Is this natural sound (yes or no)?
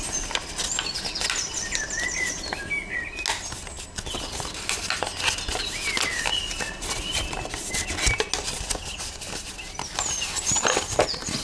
yes